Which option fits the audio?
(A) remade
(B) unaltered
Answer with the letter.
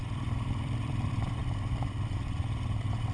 A